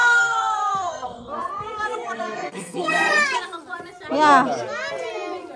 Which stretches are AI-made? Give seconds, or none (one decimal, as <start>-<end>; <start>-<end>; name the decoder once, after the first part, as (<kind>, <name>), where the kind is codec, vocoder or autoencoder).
0.0-3.4 (codec, SNAC)